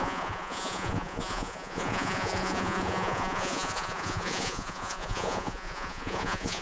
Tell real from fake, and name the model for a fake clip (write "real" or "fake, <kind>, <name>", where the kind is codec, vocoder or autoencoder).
fake, vocoder, Vocos